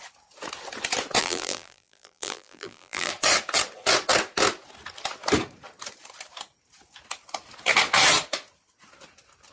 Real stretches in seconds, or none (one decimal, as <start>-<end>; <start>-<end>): 0.0-1.2; 3.1-9.5